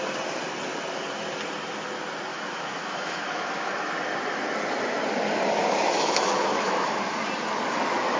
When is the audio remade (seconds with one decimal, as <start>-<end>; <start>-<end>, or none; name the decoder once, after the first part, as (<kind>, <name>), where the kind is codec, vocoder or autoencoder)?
2.3-3.7 (autoencoder, DAC-VAE); 5.6-6.8